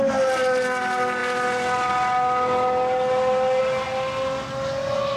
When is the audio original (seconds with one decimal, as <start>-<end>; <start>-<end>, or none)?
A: 0.0-5.2